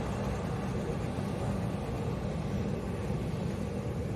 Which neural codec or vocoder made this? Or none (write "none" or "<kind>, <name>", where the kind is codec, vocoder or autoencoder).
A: none